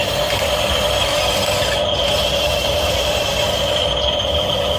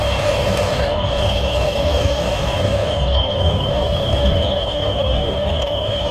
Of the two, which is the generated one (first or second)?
second